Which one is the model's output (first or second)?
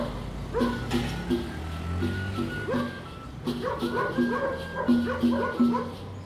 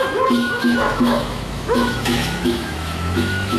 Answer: second